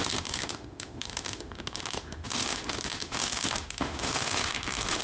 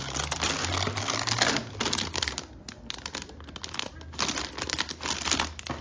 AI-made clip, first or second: first